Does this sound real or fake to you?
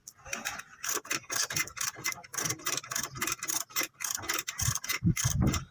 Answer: real